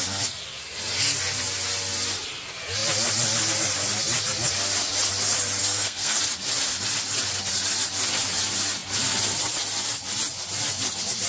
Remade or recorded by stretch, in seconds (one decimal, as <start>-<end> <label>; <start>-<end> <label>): 0.0-5.6 recorded; 5.6-6.2 remade; 6.2-11.3 recorded